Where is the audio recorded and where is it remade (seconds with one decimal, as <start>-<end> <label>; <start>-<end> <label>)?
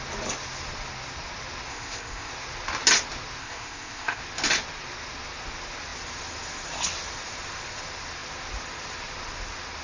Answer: 0.0-1.7 recorded; 1.7-2.3 remade; 2.3-3.4 recorded; 3.4-4.2 remade; 4.2-9.8 recorded